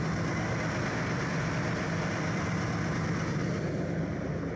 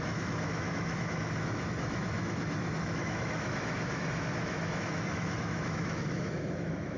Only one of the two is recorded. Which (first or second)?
first